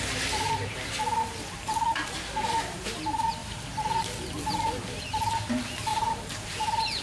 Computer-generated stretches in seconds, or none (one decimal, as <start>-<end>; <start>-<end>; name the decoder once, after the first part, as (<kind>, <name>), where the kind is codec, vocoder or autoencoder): 3.4-5.0 (vocoder, BigVGAN v2); 5.9-7.0